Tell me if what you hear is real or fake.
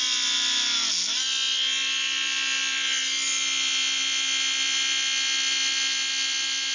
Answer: real